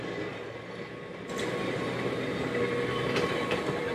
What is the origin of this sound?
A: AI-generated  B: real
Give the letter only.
B